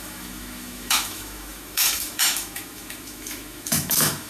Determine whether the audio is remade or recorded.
remade